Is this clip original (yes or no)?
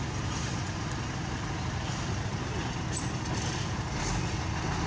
yes